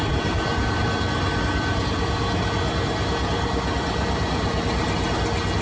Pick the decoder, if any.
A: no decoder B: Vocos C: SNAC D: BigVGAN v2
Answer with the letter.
A